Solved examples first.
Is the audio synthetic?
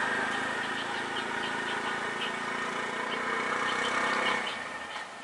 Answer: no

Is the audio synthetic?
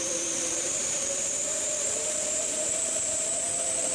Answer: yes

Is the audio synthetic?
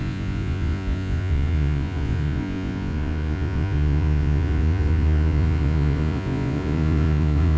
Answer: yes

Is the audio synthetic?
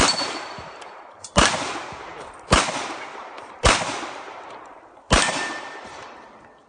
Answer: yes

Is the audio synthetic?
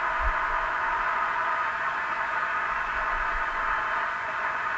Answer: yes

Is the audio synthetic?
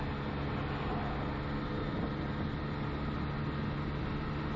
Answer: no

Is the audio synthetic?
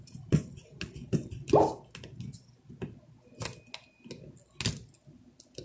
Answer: no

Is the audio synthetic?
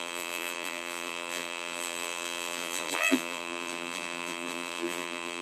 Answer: yes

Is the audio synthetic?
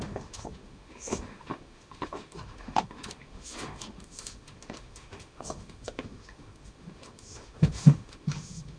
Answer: yes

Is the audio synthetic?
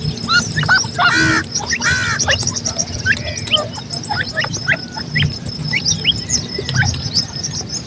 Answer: no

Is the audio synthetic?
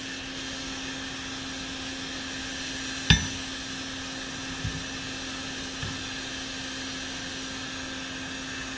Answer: no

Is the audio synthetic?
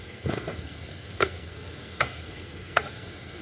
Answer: yes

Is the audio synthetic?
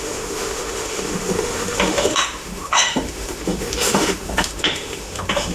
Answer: yes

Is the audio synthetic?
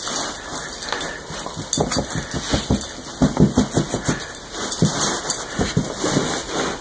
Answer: no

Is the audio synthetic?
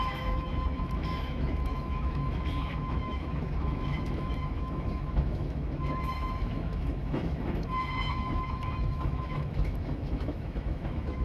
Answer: yes